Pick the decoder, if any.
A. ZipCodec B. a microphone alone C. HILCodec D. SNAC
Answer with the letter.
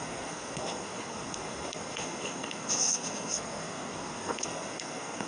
D